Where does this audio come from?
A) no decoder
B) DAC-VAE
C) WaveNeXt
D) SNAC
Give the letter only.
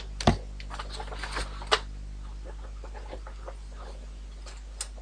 A